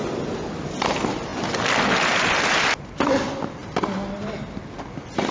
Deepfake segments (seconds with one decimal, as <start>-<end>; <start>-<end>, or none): none